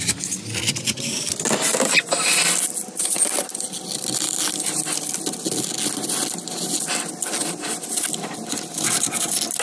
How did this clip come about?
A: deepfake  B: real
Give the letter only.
B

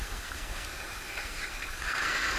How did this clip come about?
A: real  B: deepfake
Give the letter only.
B